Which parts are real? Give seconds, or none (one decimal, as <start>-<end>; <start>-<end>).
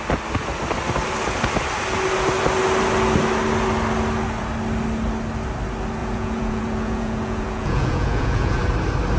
0.0-6.0; 8.6-9.2